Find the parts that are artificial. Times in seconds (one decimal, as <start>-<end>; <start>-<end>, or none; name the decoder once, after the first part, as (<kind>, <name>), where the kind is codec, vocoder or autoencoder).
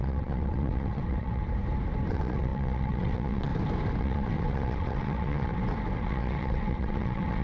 0.0-1.4 (vocoder, WaveNeXt); 2.1-3.5; 4.0-5.5; 6.0-7.4